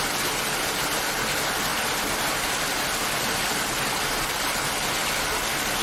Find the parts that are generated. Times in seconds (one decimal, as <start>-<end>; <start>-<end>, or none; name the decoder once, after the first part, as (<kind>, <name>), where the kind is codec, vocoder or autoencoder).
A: none